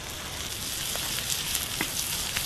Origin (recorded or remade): recorded